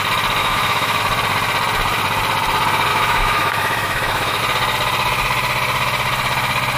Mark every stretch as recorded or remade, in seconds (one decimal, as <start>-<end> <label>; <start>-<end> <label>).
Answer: 0.0-0.4 recorded; 0.4-1.0 remade; 1.0-2.9 recorded; 2.9-4.4 remade; 4.4-6.8 recorded

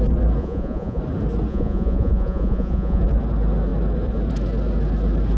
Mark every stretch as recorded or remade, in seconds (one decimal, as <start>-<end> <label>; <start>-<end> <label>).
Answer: 0.0-0.4 recorded; 0.4-1.0 remade; 1.0-1.5 recorded; 1.5-3.0 remade; 3.0-5.4 recorded

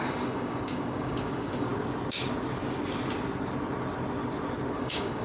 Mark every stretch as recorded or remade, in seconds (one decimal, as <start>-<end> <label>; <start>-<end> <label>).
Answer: 0.0-1.7 remade; 1.7-4.8 recorded; 4.8-5.2 remade

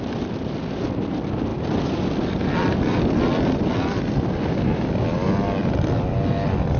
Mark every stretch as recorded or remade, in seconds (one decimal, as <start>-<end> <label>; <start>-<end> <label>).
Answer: 0.0-1.5 recorded; 1.5-4.0 remade; 4.0-6.8 recorded

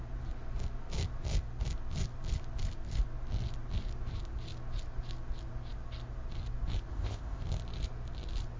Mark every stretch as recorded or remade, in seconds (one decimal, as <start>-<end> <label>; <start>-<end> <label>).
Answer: 0.0-6.9 recorded; 6.9-7.4 remade; 7.4-8.6 recorded

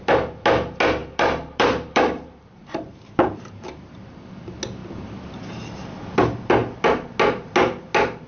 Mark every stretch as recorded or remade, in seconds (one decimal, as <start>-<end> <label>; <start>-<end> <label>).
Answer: 0.0-1.0 recorded; 1.0-4.2 remade; 4.2-4.8 recorded; 4.8-6.1 remade; 6.1-8.3 recorded